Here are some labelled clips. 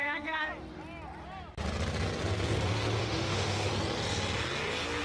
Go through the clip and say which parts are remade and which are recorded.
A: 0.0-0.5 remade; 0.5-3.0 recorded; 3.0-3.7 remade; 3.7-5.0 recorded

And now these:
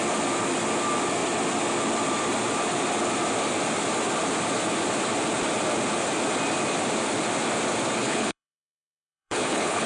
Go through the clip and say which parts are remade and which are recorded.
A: 0.0-8.0 recorded; 8.0-9.9 remade

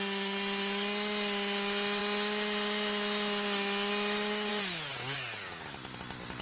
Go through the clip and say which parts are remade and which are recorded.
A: 0.0-6.4 recorded

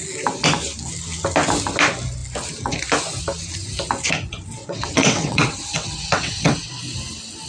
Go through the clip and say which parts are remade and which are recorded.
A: 0.0-4.6 recorded; 4.6-6.8 remade; 6.8-7.5 recorded

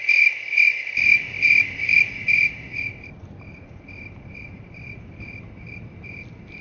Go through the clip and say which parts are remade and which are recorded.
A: 0.0-6.6 recorded

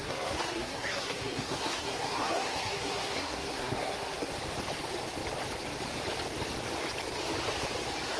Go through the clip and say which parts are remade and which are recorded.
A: 0.0-4.3 remade; 4.3-8.2 recorded

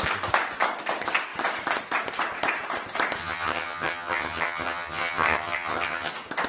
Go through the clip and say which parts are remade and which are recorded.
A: 0.0-3.2 recorded; 3.2-6.1 remade; 6.1-6.5 recorded